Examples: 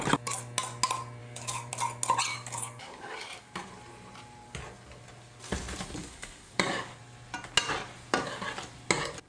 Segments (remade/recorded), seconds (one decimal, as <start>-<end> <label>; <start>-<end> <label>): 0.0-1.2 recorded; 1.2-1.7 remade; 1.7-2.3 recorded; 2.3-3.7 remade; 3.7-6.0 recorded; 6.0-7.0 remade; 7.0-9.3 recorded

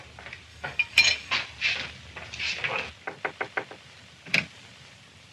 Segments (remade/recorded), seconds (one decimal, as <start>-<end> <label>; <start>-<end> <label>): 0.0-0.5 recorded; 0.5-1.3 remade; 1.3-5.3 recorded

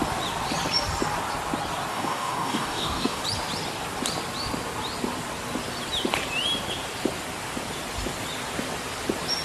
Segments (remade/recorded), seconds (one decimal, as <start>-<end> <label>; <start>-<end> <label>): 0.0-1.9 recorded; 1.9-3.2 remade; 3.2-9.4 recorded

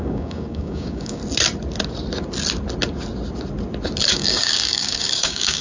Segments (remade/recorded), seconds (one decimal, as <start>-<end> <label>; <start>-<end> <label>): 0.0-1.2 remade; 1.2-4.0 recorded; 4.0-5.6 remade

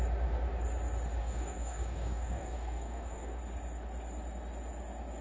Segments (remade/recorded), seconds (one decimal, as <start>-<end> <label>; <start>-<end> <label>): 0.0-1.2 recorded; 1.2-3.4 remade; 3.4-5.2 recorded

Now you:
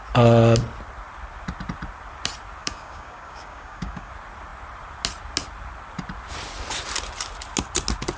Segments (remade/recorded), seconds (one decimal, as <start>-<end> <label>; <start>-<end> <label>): 0.0-2.6 recorded; 2.6-4.1 remade; 4.1-8.2 recorded

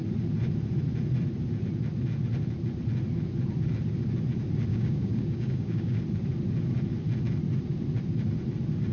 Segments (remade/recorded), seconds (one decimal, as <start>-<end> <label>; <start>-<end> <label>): 0.0-4.7 recorded; 4.7-6.0 remade; 6.0-8.9 recorded